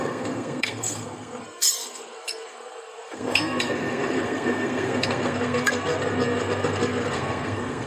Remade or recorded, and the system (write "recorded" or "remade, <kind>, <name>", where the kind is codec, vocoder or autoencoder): remade, codec, SNAC